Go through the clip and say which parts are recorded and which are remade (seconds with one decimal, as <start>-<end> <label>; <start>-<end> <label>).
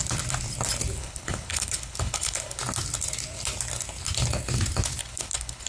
0.0-1.0 recorded; 1.0-2.6 remade; 2.6-5.0 recorded; 5.0-5.7 remade